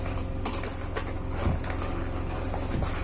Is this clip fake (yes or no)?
no